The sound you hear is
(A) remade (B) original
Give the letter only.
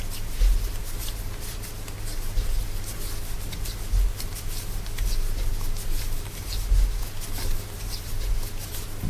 B